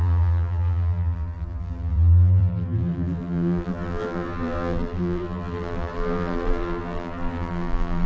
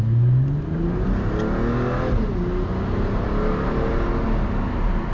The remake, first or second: first